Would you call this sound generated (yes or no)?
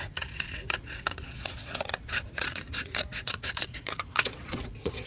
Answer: yes